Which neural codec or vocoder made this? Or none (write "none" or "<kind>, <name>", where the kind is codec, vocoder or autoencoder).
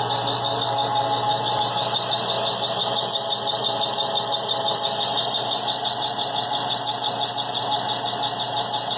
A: none